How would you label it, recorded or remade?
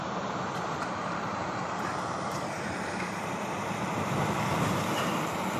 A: remade